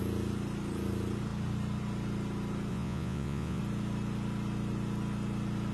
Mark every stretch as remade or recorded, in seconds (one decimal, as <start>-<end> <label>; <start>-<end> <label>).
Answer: 0.0-2.7 recorded; 2.7-3.6 remade; 3.6-5.7 recorded